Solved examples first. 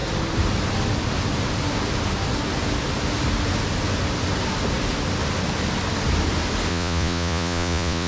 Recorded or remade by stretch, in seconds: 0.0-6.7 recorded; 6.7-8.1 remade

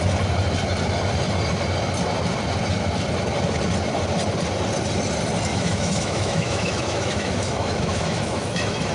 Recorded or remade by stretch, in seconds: 0.0-5.5 recorded; 5.5-8.9 remade

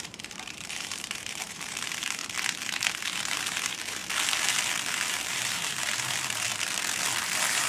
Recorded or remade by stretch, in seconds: 0.0-2.2 remade; 2.2-2.9 recorded; 2.9-4.0 remade; 4.0-5.1 recorded; 5.1-6.5 remade; 6.5-7.2 recorded; 7.2-7.7 remade

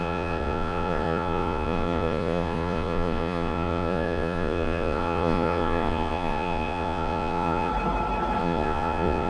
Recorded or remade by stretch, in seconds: 0.0-7.7 remade; 7.7-8.4 recorded; 8.4-9.3 remade

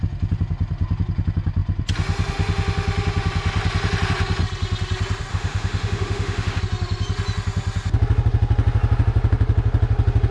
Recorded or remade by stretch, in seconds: 0.0-5.3 recorded; 5.3-6.6 remade; 6.6-10.3 recorded

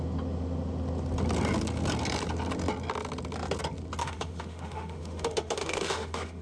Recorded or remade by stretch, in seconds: 0.0-4.0 recorded; 4.0-6.4 remade